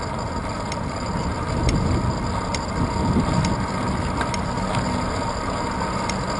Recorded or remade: recorded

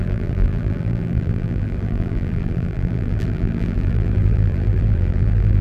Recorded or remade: remade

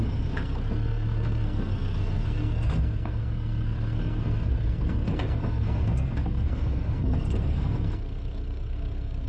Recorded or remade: remade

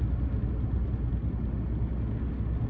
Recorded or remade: recorded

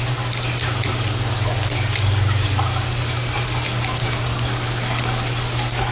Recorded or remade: recorded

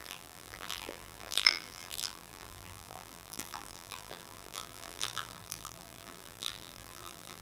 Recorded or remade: remade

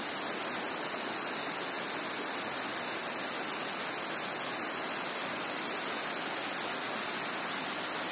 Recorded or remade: recorded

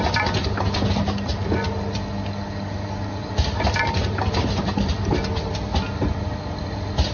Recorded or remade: recorded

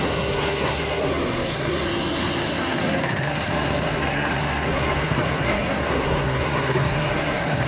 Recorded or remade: remade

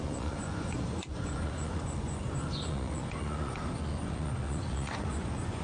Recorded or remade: remade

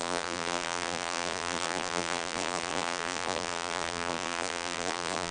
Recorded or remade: remade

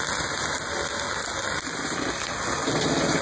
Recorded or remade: recorded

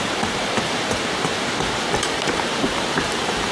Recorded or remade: remade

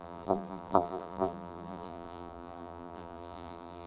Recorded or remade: remade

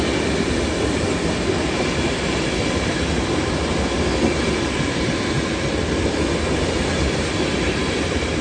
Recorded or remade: recorded